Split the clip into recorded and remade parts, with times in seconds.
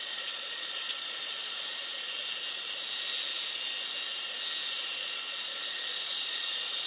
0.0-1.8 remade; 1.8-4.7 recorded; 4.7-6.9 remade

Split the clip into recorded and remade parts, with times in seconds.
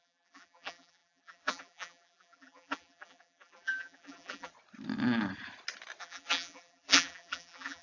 0.0-4.5 remade; 4.5-6.0 recorded; 6.0-7.8 remade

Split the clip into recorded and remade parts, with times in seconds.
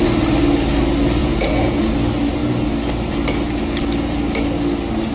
0.0-1.2 recorded; 1.2-1.8 remade; 1.8-5.1 recorded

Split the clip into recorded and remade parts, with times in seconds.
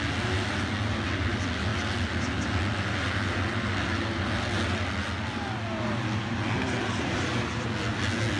0.0-8.4 recorded